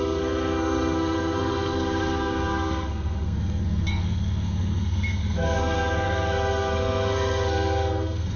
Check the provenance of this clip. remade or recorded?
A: remade